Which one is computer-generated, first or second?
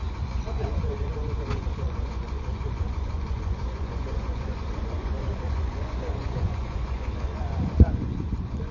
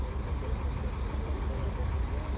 first